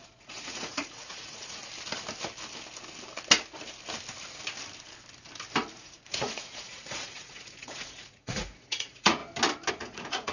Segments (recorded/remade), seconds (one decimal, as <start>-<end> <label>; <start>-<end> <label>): 0.0-1.6 remade; 1.6-5.7 recorded; 5.7-9.2 remade; 9.2-9.7 recorded; 9.7-10.3 remade